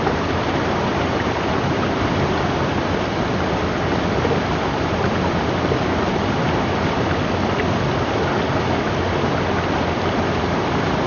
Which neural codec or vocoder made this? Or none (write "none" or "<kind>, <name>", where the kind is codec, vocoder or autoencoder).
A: none